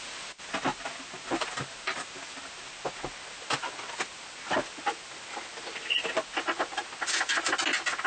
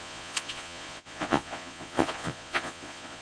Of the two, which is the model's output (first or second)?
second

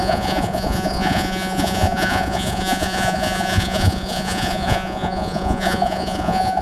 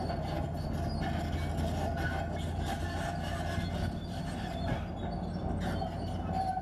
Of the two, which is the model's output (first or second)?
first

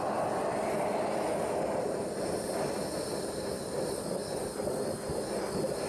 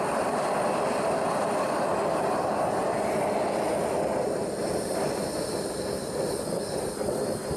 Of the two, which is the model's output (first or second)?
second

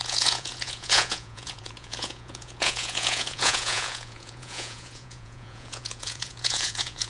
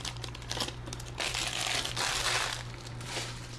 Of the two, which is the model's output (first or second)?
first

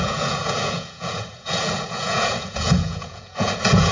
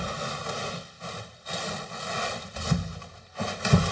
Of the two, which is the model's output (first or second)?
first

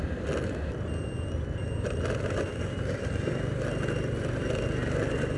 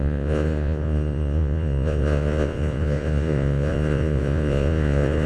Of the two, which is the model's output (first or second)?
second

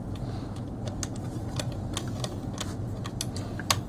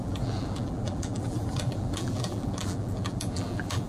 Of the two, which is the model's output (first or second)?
second